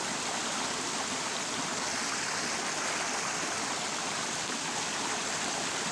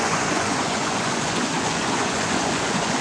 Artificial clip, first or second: second